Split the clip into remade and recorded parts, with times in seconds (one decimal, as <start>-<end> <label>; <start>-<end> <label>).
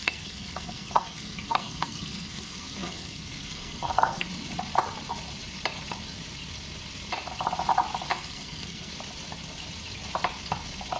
0.0-4.3 remade; 4.3-8.1 recorded; 8.1-8.9 remade; 8.9-11.0 recorded